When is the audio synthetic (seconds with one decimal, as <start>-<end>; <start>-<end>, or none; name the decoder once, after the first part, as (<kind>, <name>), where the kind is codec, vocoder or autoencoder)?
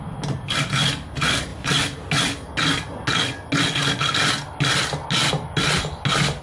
none